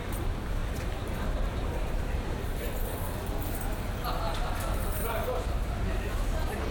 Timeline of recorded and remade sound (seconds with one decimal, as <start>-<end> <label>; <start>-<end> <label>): 0.0-0.6 remade; 0.6-1.3 recorded; 1.3-2.5 remade; 2.5-6.7 recorded